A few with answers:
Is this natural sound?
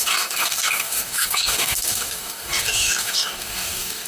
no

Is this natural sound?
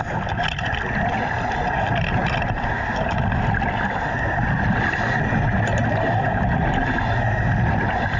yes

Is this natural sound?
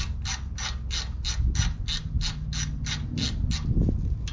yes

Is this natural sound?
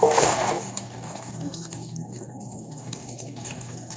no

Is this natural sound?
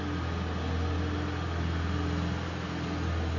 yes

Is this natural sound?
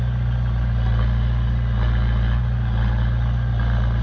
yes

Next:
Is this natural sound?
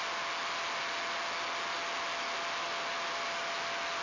yes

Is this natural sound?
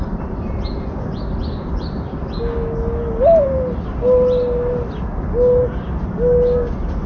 yes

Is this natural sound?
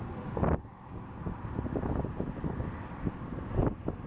yes